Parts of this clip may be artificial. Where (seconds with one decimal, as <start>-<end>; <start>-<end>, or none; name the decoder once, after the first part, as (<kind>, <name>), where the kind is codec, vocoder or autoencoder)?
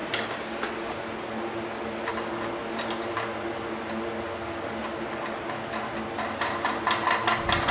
none